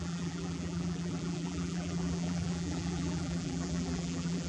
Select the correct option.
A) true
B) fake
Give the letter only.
B